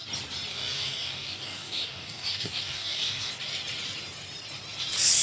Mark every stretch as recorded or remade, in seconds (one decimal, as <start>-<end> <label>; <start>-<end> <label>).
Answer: 0.0-0.5 recorded; 0.5-3.3 remade; 3.3-5.2 recorded